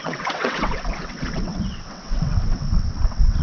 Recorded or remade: remade